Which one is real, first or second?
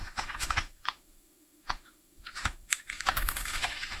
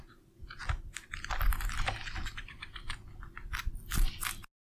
second